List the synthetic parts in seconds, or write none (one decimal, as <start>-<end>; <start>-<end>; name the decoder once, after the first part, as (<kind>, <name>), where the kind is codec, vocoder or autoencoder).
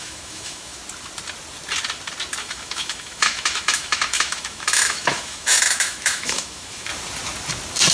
0.0-0.8 (autoencoder, DAC-VAE); 2.4-6.9